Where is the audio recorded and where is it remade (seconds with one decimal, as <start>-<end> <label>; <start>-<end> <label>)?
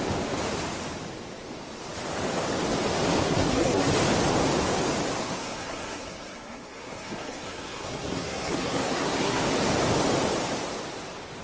0.0-3.2 recorded; 3.2-3.9 remade; 3.9-5.2 recorded; 5.2-9.4 remade; 9.4-11.4 recorded